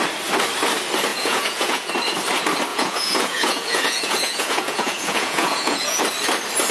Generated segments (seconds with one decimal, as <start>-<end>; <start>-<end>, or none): 1.1-1.9; 2.7-6.0